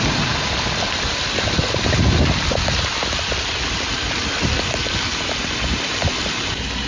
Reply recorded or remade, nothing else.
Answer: recorded